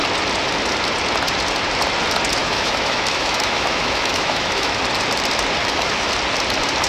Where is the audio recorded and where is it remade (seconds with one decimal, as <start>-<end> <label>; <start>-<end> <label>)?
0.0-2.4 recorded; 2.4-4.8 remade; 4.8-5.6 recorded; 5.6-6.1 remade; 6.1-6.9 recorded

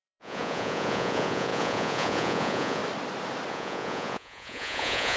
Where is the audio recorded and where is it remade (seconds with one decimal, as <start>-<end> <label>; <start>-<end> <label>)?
0.0-2.8 remade; 2.8-3.5 recorded; 3.5-5.2 remade

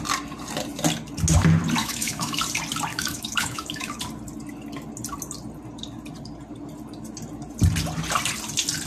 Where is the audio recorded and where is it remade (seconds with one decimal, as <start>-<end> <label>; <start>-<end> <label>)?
0.0-1.8 recorded; 1.8-2.4 remade; 2.4-2.9 recorded; 2.9-4.0 remade; 4.0-8.9 recorded